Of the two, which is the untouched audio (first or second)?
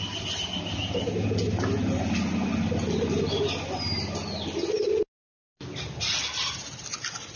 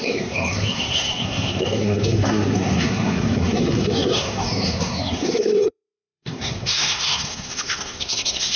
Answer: first